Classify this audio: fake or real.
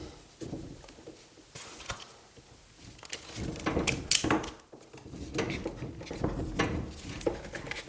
real